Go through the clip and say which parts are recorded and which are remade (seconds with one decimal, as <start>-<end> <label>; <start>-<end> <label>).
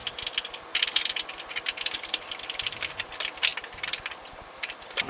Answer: 0.0-3.1 remade; 3.1-3.5 recorded; 3.5-5.1 remade